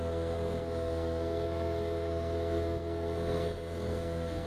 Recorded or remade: remade